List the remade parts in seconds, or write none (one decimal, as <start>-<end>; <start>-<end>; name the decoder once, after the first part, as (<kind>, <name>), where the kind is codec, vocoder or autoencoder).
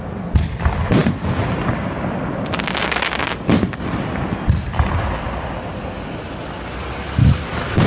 none